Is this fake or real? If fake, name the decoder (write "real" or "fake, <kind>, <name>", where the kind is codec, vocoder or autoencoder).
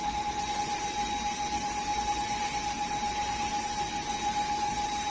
real